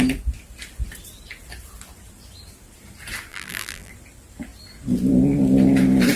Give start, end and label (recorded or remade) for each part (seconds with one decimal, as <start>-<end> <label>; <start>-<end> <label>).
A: 0.0-3.3 recorded; 3.3-3.9 remade; 3.9-6.2 recorded